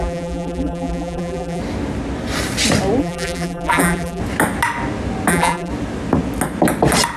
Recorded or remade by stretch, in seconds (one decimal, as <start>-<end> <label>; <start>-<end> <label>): 0.0-1.6 remade; 1.6-3.0 recorded; 3.0-4.2 remade; 4.2-5.3 recorded; 5.3-5.7 remade; 5.7-7.2 recorded